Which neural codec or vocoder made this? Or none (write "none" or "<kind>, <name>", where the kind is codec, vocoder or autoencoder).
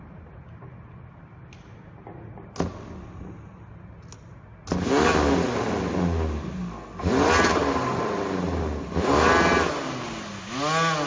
none